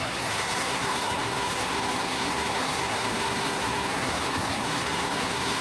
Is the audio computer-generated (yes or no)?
yes